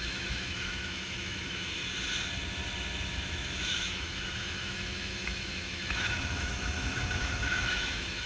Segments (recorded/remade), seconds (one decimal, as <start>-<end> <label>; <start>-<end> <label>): 0.0-1.8 remade; 1.8-3.1 recorded; 3.1-8.3 remade